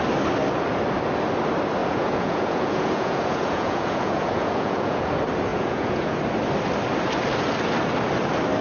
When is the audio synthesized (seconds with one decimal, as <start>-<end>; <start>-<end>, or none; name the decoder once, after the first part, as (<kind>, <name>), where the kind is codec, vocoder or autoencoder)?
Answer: 1.8-5.1 (vocoder, Vocos); 5.5-6.2